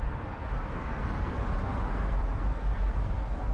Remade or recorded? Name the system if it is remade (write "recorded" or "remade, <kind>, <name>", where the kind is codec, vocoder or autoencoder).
remade, codec, SNAC